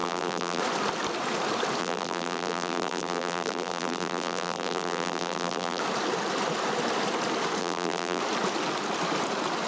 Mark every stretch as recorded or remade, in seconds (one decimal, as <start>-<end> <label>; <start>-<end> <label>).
0.0-0.6 remade; 0.6-1.8 recorded; 1.8-5.8 remade; 5.8-7.6 recorded; 7.6-8.2 remade; 8.2-9.7 recorded